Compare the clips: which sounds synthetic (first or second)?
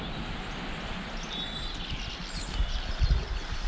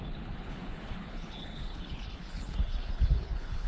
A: second